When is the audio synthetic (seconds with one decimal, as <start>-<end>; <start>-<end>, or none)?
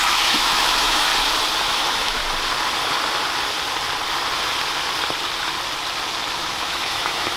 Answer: 0.0-1.1; 1.6-2.2; 6.4-7.4